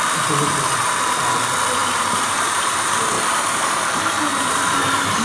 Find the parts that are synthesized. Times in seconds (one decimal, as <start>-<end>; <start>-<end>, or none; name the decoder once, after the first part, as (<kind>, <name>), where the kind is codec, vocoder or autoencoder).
1.8-5.2 (vocoder, BigVGAN v2)